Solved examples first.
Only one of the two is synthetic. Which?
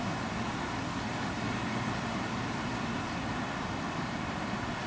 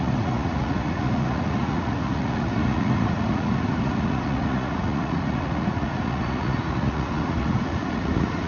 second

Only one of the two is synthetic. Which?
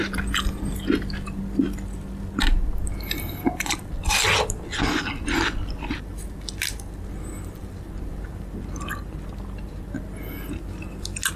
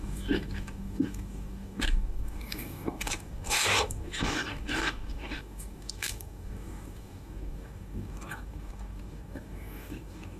second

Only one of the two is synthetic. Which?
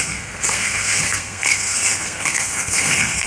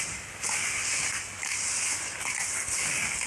first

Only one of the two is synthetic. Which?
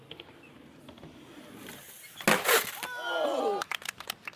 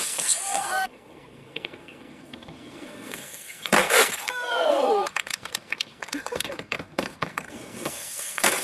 second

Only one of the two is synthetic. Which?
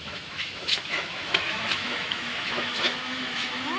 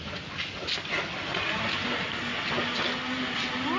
first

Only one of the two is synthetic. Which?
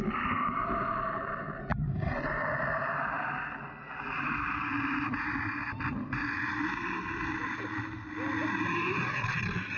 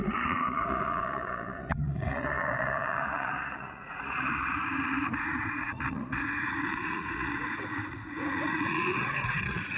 second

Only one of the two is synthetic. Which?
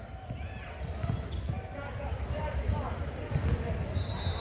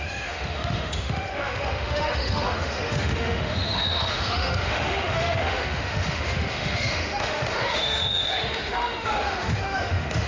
second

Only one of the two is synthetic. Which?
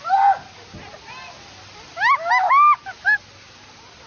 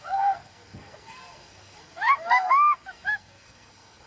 second